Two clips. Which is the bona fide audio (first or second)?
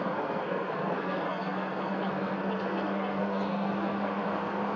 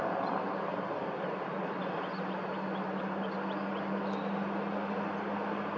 second